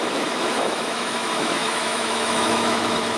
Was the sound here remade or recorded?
remade